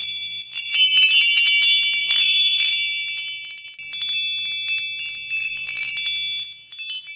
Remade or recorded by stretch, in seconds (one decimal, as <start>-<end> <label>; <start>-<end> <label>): 0.0-0.7 remade; 0.7-2.0 recorded; 2.0-2.7 remade; 2.7-5.4 recorded; 5.4-5.9 remade; 5.9-7.2 recorded